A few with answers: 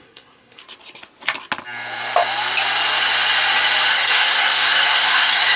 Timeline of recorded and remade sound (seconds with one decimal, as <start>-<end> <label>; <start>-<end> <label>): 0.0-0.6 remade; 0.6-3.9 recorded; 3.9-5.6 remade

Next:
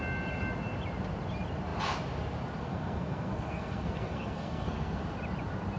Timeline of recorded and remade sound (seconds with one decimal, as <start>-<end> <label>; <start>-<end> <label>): 0.0-2.6 recorded; 2.6-5.0 remade; 5.0-5.8 recorded

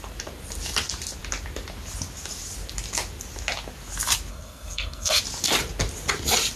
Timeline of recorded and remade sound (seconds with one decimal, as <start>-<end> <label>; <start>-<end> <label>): 0.0-4.3 recorded; 4.3-5.2 remade; 5.2-6.6 recorded